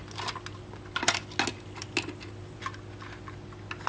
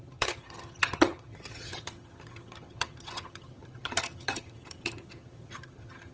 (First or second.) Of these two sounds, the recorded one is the first